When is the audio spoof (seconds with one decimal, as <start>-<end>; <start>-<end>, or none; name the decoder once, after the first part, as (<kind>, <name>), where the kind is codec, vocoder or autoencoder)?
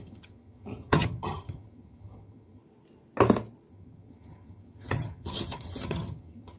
0.0-2.6 (vocoder, HiFi-GAN); 3.7-6.6